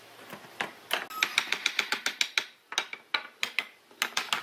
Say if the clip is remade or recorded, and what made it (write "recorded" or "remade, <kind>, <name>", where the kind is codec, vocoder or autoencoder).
recorded